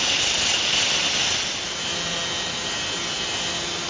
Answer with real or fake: real